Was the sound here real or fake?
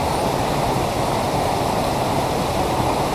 real